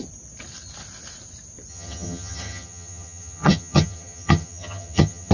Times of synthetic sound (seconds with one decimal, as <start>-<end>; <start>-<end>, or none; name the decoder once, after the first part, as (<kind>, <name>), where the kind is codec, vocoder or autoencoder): 1.7-5.3 (vocoder, HiFi-GAN)